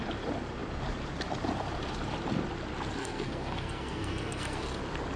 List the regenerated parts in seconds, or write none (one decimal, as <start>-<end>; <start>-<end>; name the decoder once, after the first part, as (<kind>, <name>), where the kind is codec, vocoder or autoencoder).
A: 3.0-4.8 (codec, SNAC)